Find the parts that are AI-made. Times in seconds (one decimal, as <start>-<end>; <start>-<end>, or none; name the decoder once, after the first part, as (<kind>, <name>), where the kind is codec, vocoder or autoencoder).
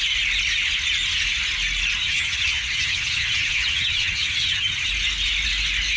2.0-4.9 (vocoder, HiFi-GAN)